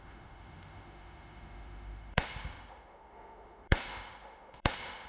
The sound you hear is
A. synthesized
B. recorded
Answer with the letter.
A